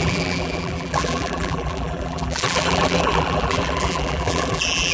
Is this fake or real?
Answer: fake